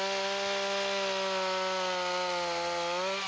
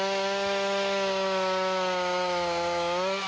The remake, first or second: second